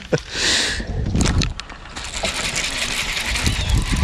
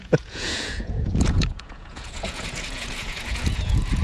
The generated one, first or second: second